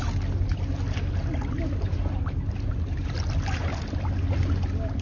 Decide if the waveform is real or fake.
real